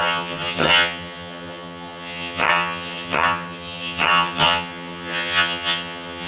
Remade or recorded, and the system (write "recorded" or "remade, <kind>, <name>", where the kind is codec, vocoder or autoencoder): remade, vocoder, HiFi-GAN